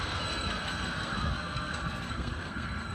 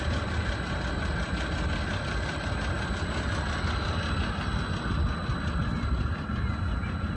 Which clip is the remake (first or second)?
first